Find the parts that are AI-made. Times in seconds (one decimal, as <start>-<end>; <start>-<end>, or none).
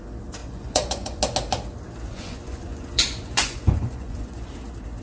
0.4-1.2; 2.1-4.5